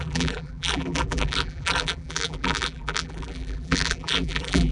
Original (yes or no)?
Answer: no